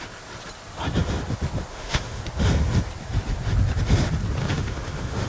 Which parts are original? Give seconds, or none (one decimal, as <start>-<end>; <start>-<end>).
0.0-1.7; 2.2-4.4